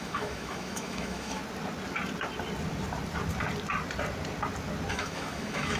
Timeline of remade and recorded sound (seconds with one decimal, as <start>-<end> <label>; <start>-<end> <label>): 0.0-1.4 remade; 1.4-4.9 recorded; 4.9-5.8 remade